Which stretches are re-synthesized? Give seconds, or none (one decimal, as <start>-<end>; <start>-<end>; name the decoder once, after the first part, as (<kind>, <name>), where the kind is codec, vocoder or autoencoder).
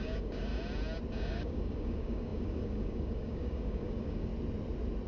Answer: 0.0-0.5 (codec, DAC); 1.3-4.3